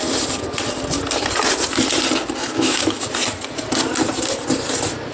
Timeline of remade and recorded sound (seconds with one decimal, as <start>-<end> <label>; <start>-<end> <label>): 0.0-2.4 recorded; 2.4-3.0 remade; 3.0-5.1 recorded